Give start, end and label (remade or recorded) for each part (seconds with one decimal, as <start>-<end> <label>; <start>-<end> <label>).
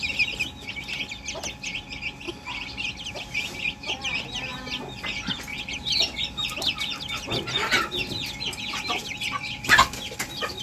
0.0-10.6 recorded